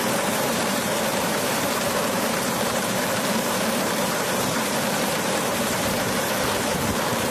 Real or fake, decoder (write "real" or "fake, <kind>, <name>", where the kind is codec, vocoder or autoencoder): fake, vocoder, BigVGAN v2